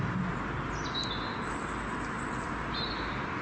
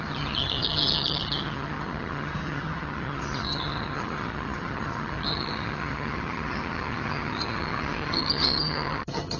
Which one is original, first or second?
first